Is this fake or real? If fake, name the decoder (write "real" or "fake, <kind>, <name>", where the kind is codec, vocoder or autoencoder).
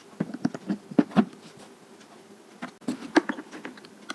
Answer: real